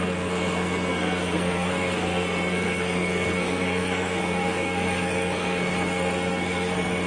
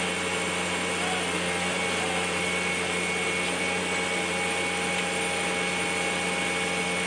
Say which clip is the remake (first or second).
first